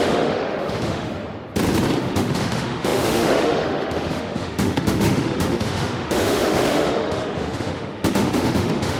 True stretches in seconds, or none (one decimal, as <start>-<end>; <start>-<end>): 1.1-2.0